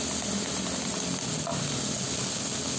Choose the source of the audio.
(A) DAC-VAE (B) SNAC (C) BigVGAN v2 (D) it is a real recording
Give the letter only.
D